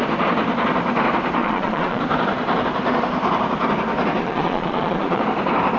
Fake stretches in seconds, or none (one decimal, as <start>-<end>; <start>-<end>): 1.4-2.0; 4.2-5.2